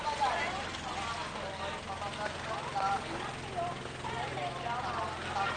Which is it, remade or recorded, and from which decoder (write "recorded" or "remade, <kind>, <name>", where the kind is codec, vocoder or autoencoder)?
recorded